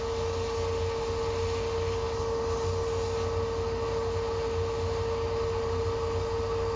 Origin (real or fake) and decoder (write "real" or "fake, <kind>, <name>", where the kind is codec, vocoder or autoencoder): real